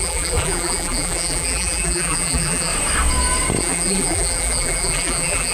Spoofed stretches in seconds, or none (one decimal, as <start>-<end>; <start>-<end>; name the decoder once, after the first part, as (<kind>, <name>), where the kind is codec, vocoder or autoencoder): 0.0-2.7 (vocoder, BigVGAN v2); 3.6-5.5